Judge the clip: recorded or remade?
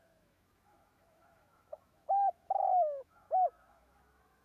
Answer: remade